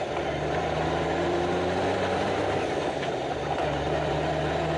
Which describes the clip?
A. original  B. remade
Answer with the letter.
B